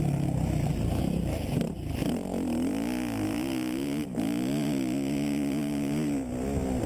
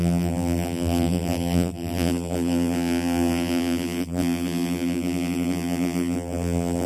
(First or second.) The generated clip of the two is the second